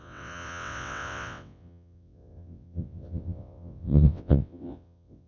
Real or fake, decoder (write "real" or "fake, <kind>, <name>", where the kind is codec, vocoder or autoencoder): fake, vocoder, WaveNeXt